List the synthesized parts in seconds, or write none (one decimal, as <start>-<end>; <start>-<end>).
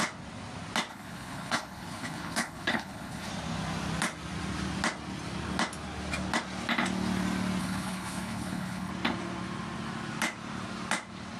0.9-3.3; 7.6-8.9